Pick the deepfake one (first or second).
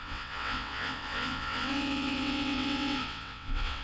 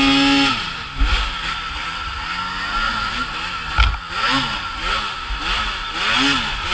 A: first